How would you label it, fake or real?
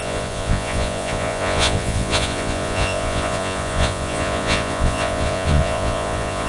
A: fake